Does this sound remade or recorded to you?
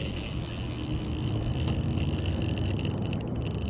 recorded